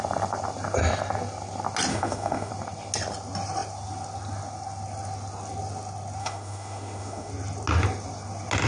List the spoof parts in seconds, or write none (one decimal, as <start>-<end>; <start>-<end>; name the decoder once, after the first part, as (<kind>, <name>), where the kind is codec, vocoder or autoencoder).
1.9-2.5 (autoencoder, DAC-VAE); 6.2-7.3